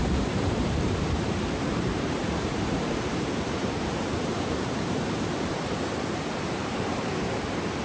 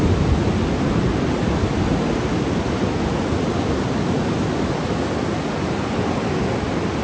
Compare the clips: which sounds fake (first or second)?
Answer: first